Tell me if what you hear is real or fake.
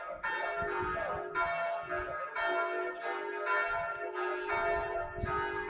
real